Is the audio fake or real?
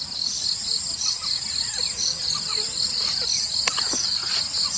real